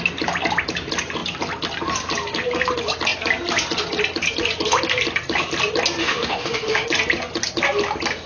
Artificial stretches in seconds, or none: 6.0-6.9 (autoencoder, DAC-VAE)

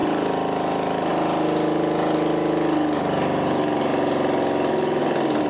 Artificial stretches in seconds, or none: none

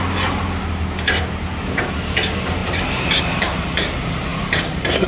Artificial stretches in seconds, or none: 4.3-5.1 (vocoder, BigVGAN v2)

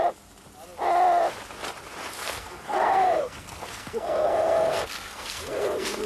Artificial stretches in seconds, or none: 2.2-6.1 (codec, SNAC)